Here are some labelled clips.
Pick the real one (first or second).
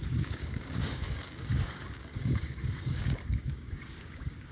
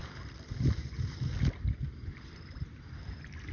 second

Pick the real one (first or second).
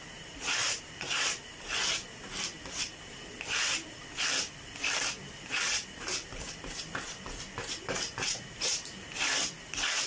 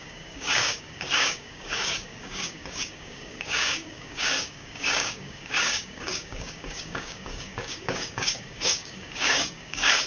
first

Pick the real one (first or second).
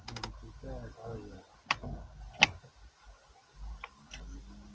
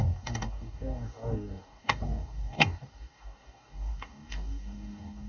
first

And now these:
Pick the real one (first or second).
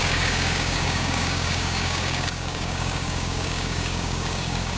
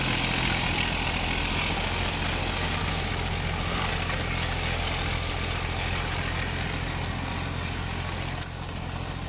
second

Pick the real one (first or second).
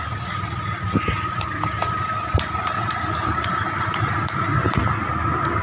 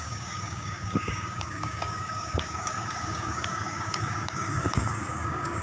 first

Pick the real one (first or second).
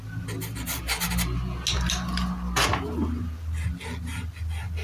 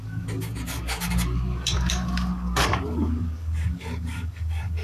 first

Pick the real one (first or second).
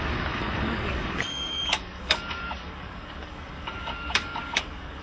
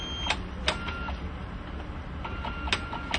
second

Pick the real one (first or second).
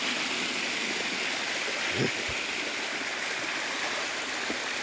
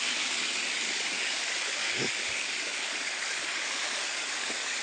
first